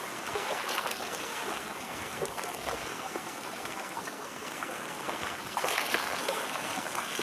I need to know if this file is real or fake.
fake